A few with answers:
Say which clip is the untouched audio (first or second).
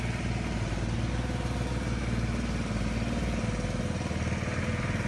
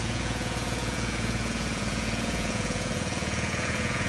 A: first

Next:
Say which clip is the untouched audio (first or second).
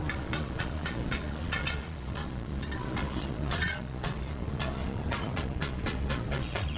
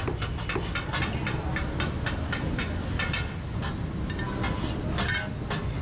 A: second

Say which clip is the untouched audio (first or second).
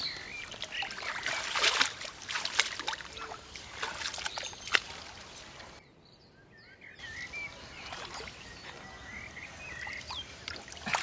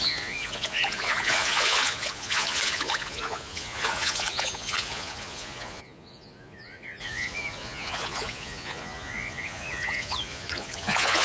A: first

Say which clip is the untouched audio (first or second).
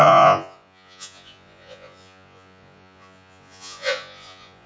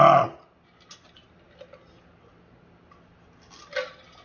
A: second